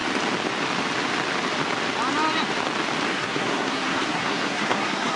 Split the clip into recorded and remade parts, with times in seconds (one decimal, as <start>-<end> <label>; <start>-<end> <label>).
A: 0.0-3.1 recorded; 3.1-5.2 remade